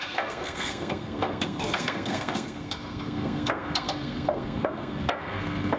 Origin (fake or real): fake